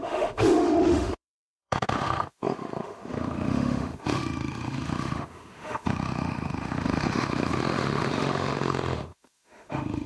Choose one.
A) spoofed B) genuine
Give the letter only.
A